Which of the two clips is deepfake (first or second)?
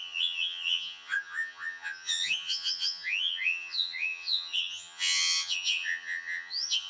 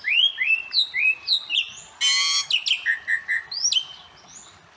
first